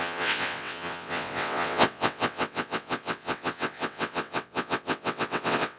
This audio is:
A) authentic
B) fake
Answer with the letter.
B